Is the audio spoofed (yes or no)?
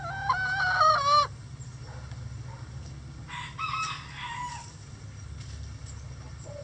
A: no